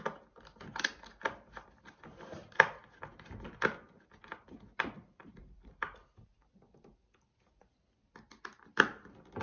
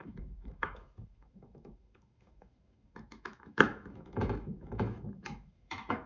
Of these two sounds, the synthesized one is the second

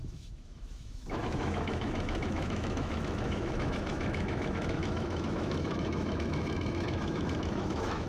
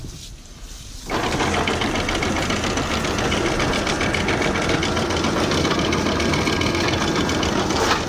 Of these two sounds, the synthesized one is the first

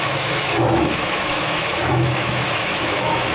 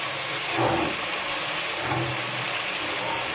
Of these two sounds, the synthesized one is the first